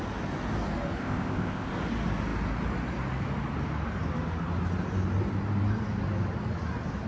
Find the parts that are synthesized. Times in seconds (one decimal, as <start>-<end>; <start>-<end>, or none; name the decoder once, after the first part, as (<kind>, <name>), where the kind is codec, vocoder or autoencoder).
1.0-1.7 (codec, ZipCodec)